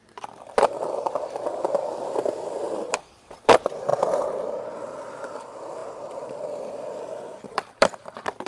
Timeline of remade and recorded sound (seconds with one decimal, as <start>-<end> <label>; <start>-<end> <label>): 0.0-3.9 remade; 3.9-4.7 recorded; 4.7-8.5 remade